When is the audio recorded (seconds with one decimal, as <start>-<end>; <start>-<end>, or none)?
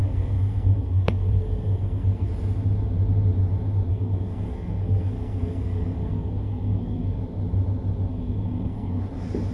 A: 2.3-3.9; 7.2-8.1; 9.0-9.5